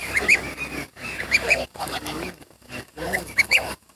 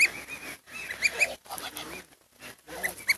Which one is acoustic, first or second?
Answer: second